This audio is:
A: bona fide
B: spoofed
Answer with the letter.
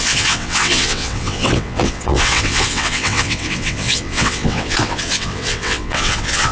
B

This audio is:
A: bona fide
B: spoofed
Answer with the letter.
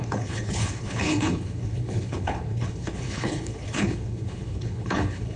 B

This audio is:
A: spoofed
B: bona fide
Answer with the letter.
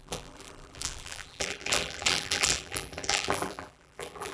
A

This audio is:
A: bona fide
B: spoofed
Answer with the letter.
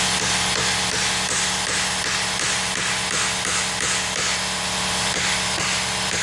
A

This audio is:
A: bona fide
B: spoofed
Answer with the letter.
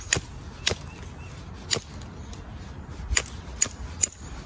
A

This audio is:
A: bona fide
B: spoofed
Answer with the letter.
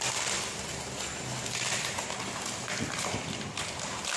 A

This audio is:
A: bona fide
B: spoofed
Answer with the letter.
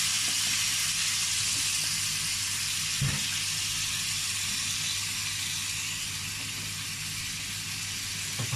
A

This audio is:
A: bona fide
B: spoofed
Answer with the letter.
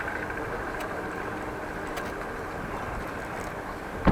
A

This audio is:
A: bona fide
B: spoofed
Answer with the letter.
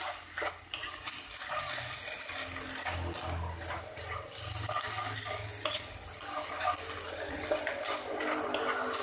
A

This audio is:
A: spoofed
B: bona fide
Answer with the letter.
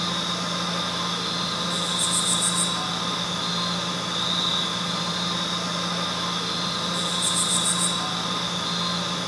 B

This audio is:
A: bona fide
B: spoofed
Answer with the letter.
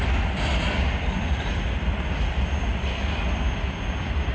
A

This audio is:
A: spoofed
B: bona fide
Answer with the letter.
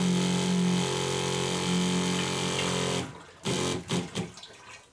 B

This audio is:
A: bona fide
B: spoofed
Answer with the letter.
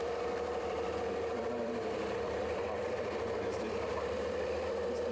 B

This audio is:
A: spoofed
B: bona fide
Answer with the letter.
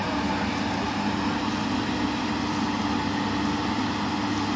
B